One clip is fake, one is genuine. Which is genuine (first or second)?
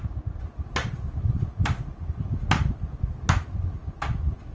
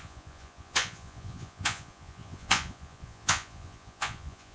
first